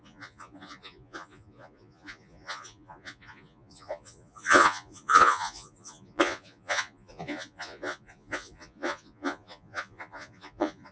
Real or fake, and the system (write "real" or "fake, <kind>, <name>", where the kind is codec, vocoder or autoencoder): fake, vocoder, Vocos